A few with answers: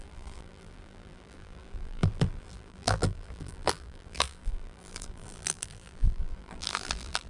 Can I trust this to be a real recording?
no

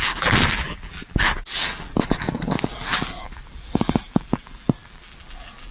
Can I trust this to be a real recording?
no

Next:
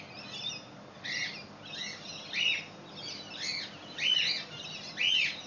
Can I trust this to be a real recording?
yes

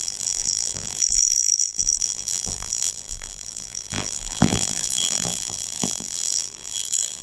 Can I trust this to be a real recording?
no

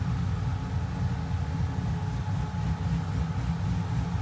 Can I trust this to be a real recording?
yes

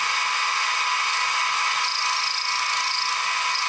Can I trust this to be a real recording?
yes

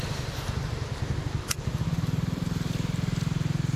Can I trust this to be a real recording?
no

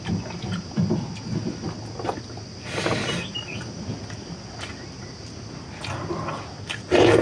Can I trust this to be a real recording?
yes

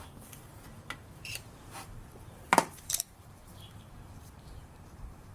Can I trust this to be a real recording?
no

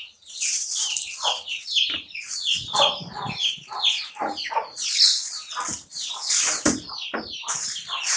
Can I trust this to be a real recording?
no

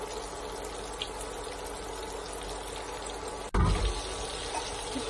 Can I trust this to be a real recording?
yes